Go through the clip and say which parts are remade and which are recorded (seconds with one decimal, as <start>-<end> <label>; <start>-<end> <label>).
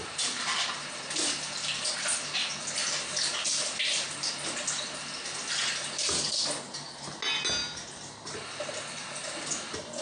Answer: 0.0-7.6 recorded; 7.6-8.7 remade; 8.7-10.0 recorded